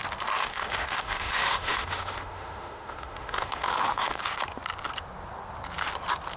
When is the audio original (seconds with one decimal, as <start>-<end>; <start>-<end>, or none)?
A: 0.0-0.4; 4.2-6.4